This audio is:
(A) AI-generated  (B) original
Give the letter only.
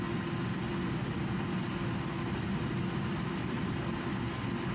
B